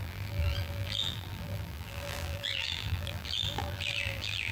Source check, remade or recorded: remade